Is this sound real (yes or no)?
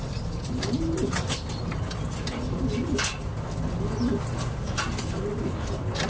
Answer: yes